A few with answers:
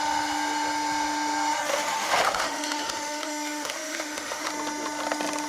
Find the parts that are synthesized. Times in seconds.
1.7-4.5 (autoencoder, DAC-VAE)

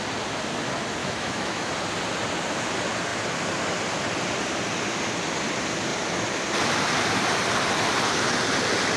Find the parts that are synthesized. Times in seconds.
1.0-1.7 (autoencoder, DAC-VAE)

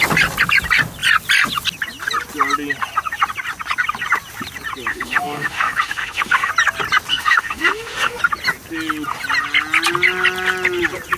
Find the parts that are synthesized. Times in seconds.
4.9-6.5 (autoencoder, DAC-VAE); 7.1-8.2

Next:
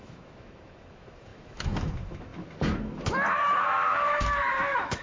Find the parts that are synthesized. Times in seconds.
0.0-5.0 (autoencoder, DAC-VAE)

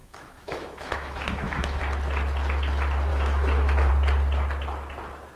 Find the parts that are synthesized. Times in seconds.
0.0-1.8 (autoencoder, DAC-VAE); 3.1-3.9

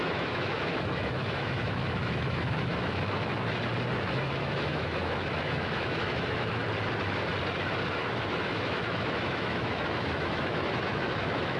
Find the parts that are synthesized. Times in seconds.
0.0-3.3 (autoencoder, DAC-VAE); 4.0-6.6; 7.9-11.6